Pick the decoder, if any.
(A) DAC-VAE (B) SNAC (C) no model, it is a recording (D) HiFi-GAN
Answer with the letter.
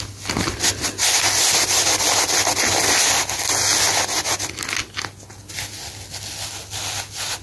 C